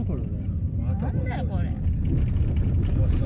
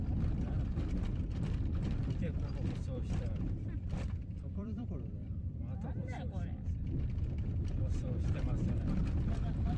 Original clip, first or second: first